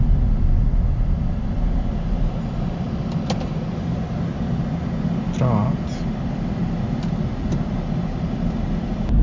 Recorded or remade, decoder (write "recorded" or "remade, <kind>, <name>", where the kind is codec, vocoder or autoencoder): recorded